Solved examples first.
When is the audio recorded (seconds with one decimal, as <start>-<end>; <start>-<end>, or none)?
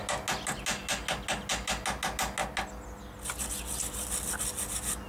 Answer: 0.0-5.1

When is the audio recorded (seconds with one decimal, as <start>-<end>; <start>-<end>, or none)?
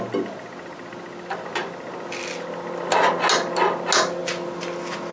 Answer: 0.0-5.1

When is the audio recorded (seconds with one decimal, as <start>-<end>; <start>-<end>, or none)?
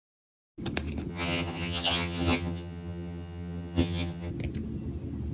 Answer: 0.0-1.1; 4.3-5.3